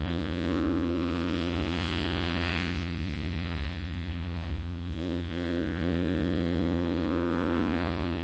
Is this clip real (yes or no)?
no